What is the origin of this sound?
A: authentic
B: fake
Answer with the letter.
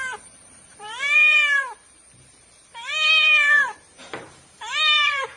B